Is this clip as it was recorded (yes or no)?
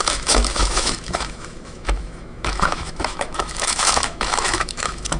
no